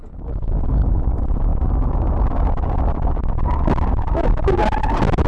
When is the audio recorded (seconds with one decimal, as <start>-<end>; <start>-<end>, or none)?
0.0-5.3